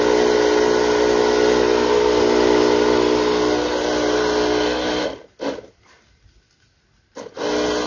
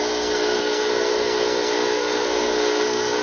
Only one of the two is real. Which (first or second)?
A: first